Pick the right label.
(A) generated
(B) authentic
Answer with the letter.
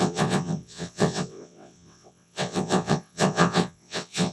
A